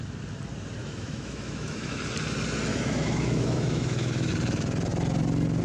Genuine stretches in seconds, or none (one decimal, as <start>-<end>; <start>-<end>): 0.0-0.8; 2.0-2.7; 4.3-5.6